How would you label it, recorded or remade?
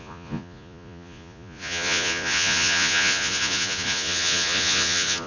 remade